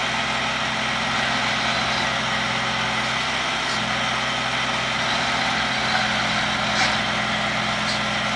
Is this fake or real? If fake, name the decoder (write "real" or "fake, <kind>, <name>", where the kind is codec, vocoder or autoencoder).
real